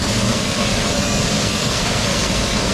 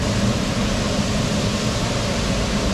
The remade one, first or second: first